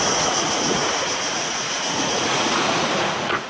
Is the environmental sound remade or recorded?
remade